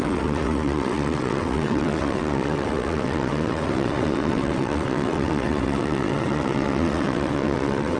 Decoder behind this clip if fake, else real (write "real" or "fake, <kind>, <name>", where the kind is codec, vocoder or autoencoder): fake, vocoder, WaveNeXt